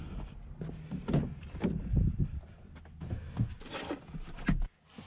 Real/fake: real